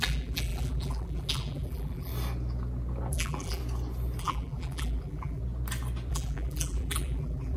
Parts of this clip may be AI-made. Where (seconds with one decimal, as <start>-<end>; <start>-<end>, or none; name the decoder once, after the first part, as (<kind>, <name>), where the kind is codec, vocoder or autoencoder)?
0.0-2.1 (vocoder, BigVGAN v2); 3.1-3.6; 4.2-5.4; 6.1-7.6